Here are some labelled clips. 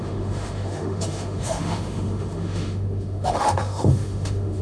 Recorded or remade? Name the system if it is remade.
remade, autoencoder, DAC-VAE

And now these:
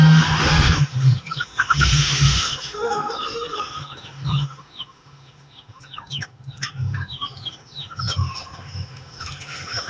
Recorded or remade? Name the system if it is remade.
remade, autoencoder, DAC-VAE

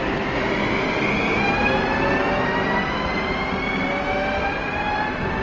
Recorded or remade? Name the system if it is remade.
recorded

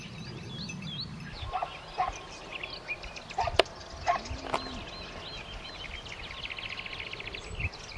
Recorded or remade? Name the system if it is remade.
recorded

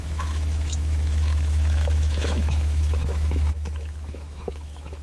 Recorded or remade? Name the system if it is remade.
remade, autoencoder, DAC-VAE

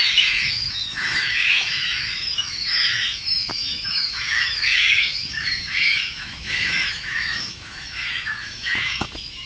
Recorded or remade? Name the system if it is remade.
remade, autoencoder, DAC-VAE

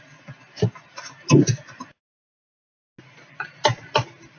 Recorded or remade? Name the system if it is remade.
recorded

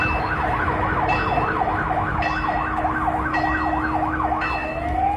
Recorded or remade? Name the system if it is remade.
remade, autoencoder, DAC-VAE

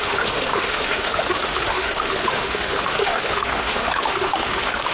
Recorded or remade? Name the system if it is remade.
remade, autoencoder, DAC-VAE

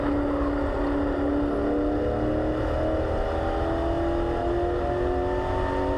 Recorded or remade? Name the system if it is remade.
recorded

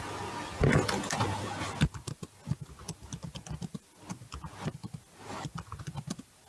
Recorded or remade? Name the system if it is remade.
recorded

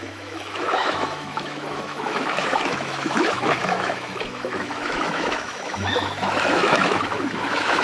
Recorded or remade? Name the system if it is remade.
remade, autoencoder, DAC-VAE